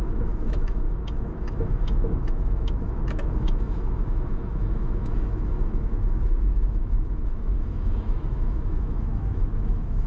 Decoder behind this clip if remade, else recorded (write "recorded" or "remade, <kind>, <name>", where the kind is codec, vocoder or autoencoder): remade, autoencoder, DAC-VAE